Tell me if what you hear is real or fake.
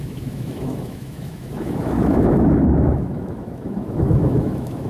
fake